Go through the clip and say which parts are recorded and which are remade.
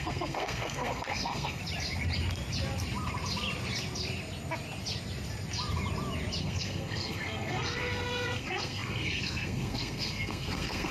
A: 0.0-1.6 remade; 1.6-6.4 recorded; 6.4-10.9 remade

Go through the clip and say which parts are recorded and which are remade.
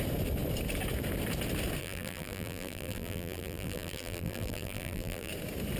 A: 0.0-1.8 recorded; 1.8-5.3 remade; 5.3-5.8 recorded